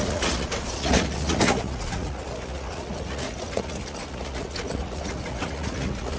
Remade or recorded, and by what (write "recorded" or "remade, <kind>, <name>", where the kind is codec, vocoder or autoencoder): remade, vocoder, Vocos